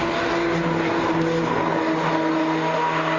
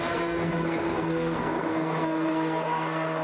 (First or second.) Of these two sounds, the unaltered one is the first